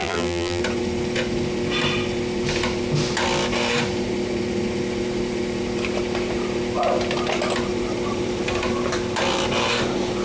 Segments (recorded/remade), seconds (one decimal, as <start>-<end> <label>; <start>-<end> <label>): 0.0-0.6 remade; 0.6-10.2 recorded